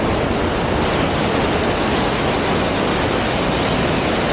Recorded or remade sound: recorded